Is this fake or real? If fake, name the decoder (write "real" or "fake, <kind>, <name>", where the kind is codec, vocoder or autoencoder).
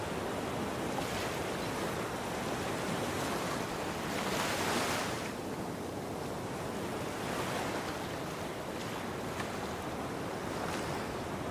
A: real